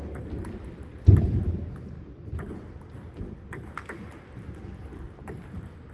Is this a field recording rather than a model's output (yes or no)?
yes